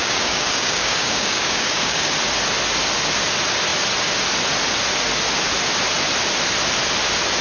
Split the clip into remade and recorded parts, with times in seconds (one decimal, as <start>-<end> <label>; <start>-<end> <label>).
0.0-2.1 remade; 2.1-7.4 recorded